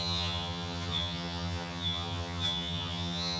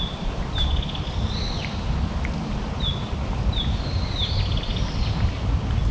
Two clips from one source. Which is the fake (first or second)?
first